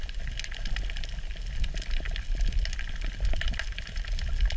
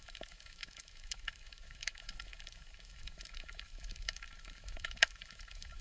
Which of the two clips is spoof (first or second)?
second